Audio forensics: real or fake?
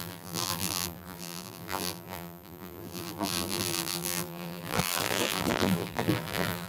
fake